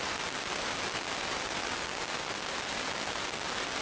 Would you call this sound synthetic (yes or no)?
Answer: no